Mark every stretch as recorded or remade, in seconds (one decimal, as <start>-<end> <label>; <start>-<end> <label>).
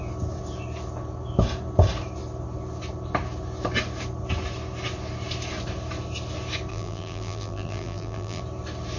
0.0-6.7 recorded; 6.7-8.4 remade; 8.4-9.0 recorded